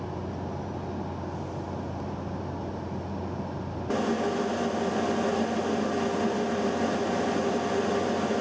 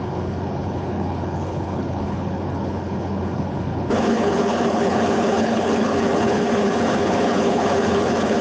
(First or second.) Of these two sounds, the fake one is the second